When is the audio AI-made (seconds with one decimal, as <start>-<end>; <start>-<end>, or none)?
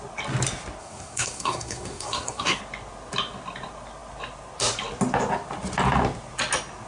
0.8-2.6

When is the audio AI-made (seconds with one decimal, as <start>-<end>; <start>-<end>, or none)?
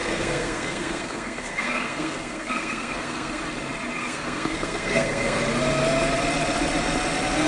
0.0-3.4; 4.0-5.4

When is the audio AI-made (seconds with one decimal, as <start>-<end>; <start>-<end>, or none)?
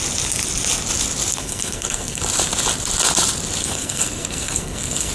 1.3-2.2; 3.6-5.1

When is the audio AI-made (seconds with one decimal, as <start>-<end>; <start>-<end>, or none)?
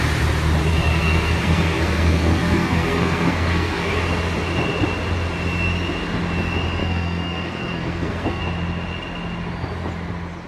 0.7-3.9; 6.8-8.4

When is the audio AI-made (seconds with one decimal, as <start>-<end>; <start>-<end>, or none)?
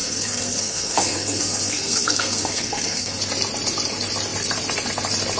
0.0-3.2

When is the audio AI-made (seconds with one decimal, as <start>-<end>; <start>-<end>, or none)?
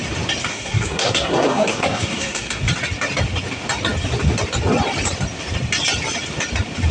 0.5-2.6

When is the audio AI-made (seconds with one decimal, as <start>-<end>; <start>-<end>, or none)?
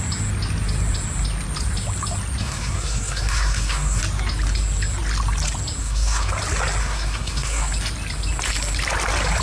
2.4-4.0; 5.8-6.3; 6.8-7.7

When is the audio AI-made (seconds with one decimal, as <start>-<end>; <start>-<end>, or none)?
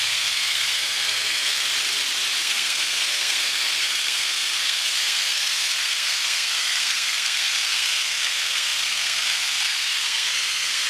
0.0-1.7; 2.4-10.9